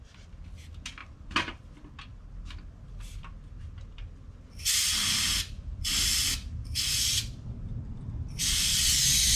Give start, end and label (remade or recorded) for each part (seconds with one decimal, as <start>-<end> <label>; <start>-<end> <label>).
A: 0.0-1.0 recorded; 1.0-1.9 remade; 1.9-9.4 recorded